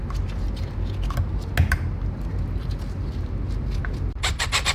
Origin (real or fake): real